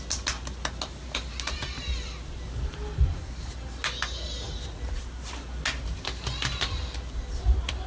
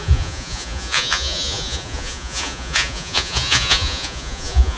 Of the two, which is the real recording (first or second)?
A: first